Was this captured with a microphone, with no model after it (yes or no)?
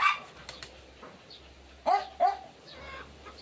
yes